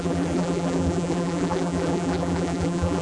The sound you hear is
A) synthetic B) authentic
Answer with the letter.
A